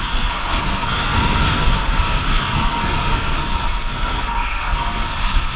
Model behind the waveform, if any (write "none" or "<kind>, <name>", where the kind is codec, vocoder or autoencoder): codec, SNAC